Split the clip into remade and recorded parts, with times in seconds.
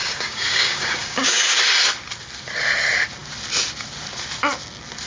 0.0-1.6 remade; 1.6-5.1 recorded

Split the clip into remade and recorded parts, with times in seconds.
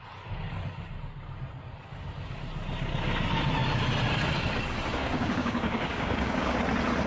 0.0-5.0 recorded; 5.0-6.6 remade; 6.6-7.1 recorded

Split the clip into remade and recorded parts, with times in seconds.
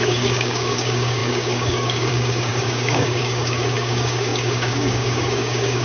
0.0-5.8 remade